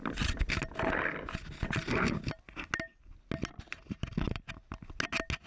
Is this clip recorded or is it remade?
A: recorded